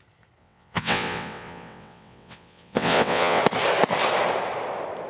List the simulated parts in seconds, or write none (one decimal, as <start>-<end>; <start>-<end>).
0.4-3.4